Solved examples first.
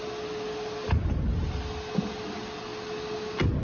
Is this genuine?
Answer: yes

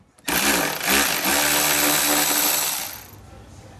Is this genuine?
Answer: yes